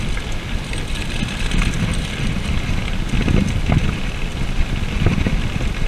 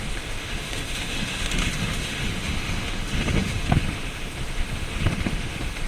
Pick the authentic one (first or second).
first